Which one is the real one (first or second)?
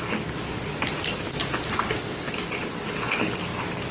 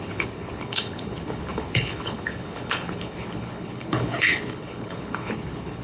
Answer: first